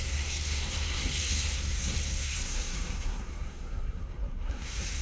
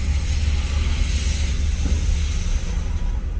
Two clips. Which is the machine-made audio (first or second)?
first